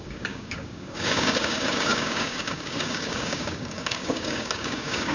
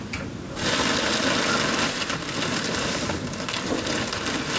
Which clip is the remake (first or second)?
first